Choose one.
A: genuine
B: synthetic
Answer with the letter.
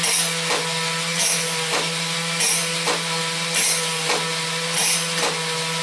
A